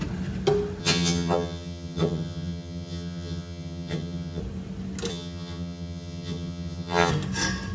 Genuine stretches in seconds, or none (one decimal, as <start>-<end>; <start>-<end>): 0.0-0.8; 4.4-5.1; 7.1-7.7